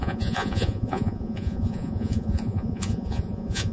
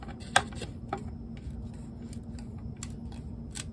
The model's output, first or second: first